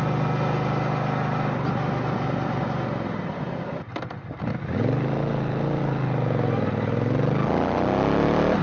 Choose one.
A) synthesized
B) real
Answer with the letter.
B